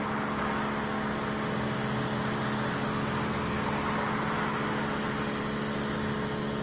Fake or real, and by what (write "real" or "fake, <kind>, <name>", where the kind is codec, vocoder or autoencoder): real